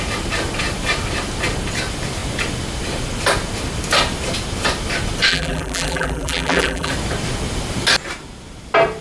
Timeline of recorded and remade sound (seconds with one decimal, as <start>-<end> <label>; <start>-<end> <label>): 0.0-5.3 recorded; 5.3-6.9 remade; 6.9-9.0 recorded